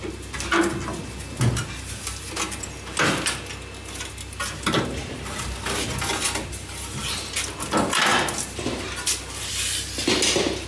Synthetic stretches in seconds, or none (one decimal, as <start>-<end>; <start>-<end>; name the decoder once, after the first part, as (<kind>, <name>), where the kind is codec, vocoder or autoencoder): none